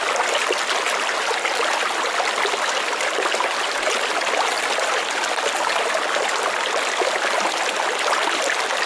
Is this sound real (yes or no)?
yes